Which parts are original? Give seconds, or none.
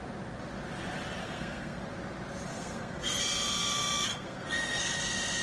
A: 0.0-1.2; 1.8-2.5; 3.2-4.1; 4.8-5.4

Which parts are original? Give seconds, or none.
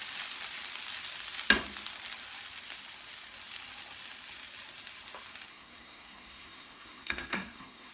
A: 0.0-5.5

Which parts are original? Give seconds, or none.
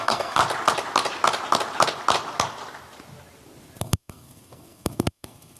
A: 0.4-3.8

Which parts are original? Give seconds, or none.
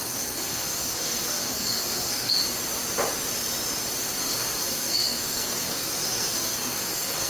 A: 2.3-4.2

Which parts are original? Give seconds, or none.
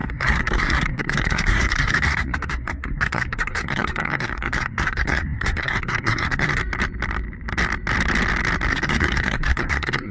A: 6.6-8.7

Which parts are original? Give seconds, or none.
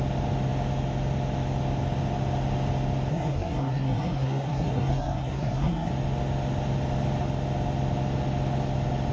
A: 0.0-3.1; 5.9-9.1